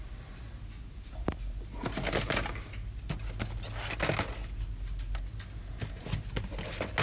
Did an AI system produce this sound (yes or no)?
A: no